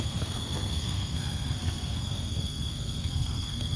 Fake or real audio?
fake